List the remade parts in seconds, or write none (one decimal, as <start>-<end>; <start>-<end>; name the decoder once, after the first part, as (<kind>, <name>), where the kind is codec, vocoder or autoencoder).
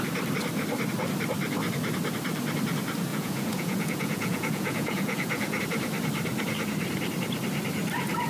3.1-5.6 (vocoder, Vocos)